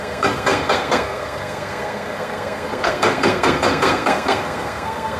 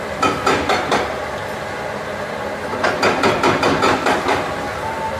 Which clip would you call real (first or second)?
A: second